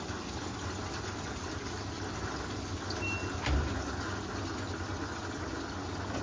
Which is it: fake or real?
real